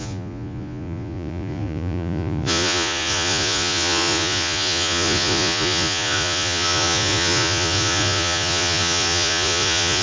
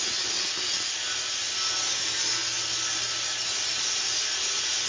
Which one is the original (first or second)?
second